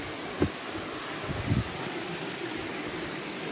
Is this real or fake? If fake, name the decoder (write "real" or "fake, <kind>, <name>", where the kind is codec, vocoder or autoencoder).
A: real